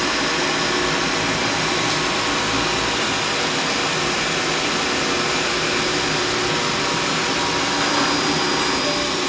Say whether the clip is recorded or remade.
recorded